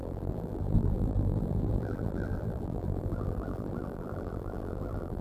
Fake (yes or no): yes